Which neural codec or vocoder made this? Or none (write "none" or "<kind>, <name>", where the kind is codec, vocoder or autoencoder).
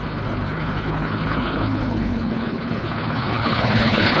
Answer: codec, HILCodec